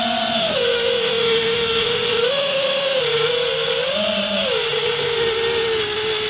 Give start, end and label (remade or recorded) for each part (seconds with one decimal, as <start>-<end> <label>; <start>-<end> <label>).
0.0-0.4 recorded; 0.4-3.0 remade; 3.0-6.3 recorded